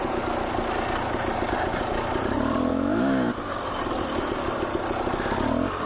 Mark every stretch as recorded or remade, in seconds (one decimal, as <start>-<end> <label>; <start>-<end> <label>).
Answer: 0.0-2.7 recorded; 2.7-3.3 remade; 3.3-5.9 recorded